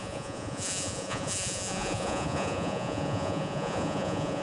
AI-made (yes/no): yes